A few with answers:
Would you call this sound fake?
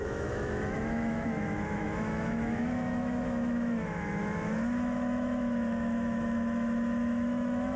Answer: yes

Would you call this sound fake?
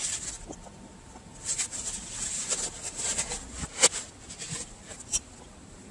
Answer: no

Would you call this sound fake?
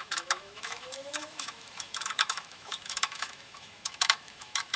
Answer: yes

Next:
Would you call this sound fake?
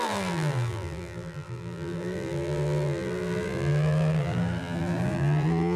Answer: yes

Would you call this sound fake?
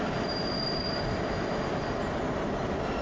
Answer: no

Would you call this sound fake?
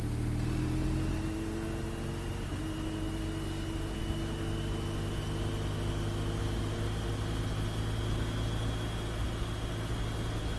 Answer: no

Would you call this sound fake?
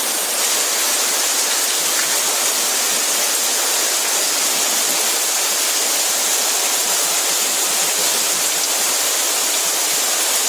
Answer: no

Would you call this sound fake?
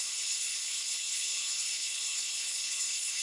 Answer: yes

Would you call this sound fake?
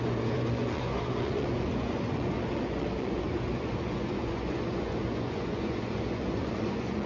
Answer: yes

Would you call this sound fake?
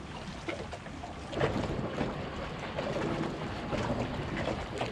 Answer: no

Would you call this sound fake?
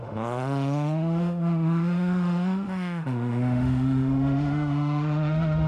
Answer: yes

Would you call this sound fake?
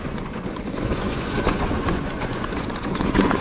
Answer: yes